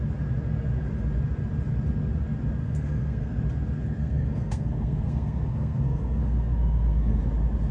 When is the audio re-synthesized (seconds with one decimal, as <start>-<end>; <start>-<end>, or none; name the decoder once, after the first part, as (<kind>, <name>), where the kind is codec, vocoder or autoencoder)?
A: 2.6-3.4 (codec, SNAC); 4.0-7.2